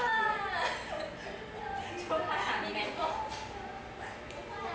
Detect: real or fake real